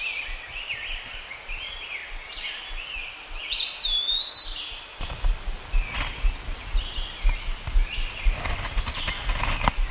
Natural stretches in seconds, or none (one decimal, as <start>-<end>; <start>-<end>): 0.0-9.9